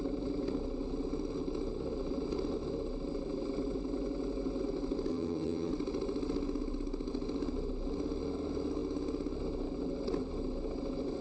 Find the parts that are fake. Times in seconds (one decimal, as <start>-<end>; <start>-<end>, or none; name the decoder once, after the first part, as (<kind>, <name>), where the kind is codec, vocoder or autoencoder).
5.1-5.7 (vocoder, HiFi-GAN)